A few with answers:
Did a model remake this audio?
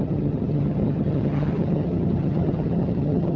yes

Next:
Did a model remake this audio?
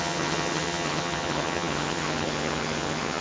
yes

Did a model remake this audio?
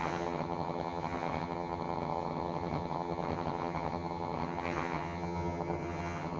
yes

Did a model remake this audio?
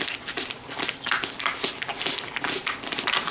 no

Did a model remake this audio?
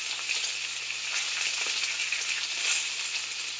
no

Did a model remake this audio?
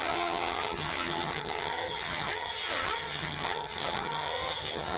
yes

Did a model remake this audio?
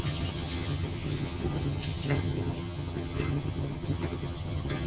yes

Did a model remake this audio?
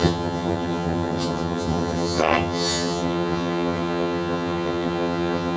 yes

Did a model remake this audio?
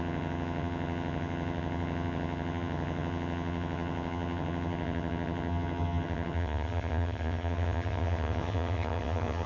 yes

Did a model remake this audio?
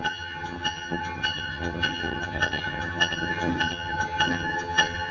yes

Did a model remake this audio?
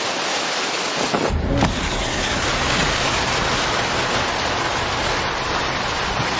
no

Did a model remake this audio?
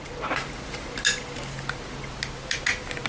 no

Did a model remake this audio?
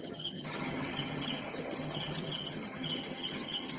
yes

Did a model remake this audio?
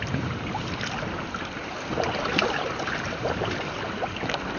no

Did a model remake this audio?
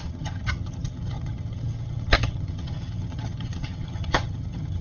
yes